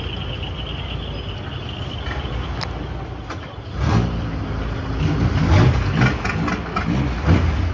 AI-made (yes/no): no